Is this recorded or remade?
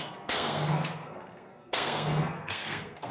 remade